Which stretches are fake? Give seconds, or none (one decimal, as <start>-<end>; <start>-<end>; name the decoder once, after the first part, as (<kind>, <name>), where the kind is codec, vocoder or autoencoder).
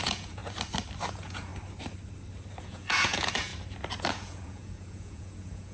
0.0-0.4 (vocoder, Vocos); 1.1-1.5; 2.6-3.5; 4.1-5.7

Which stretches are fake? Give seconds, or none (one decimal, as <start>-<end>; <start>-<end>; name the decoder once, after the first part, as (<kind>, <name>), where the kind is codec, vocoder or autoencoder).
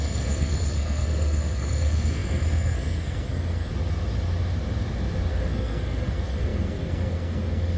0.0-3.7 (codec, SNAC); 5.3-7.8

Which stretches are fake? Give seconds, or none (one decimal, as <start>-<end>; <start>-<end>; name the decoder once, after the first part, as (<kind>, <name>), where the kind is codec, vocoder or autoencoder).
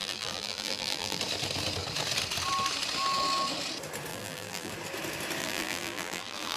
0.0-1.2 (vocoder, BigVGAN v2); 4.1-4.7; 5.4-6.6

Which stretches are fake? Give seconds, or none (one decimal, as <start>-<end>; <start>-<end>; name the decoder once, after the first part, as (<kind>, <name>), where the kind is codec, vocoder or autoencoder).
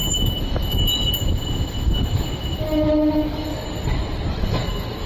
0.0-3.5 (autoencoder, DAC-VAE); 4.3-5.1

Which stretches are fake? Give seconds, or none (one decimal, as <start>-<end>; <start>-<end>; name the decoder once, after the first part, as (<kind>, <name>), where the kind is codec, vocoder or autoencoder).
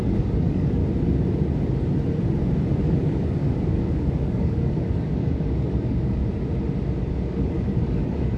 0.0-0.8 (codec, DAC); 2.8-6.2; 7.0-8.4